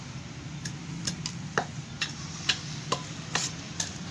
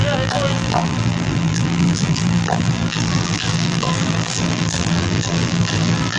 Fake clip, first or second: second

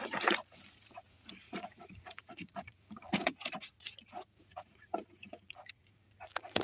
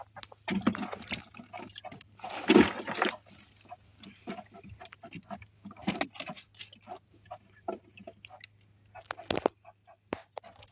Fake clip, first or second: first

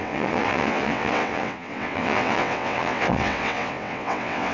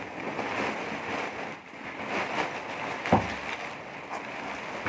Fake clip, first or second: first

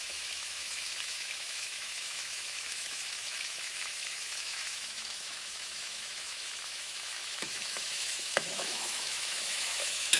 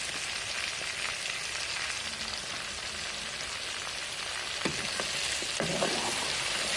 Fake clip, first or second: first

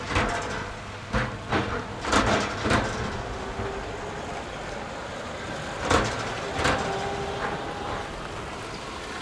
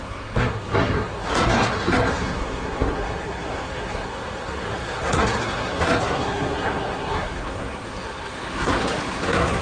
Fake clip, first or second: second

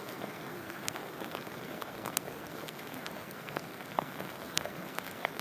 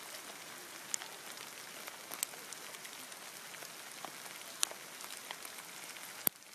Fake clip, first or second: first